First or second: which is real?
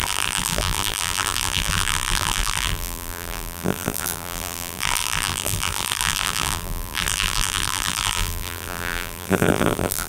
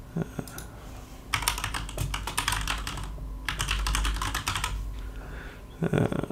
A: second